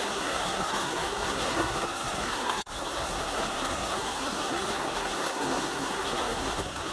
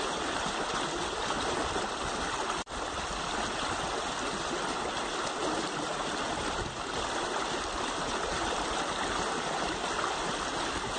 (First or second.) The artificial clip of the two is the first